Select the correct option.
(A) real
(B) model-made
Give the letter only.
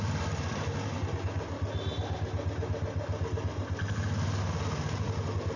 A